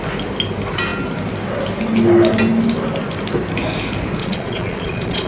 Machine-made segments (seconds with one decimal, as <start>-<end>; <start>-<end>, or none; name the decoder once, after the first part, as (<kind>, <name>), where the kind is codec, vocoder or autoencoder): 4.2-5.3 (vocoder, Vocos)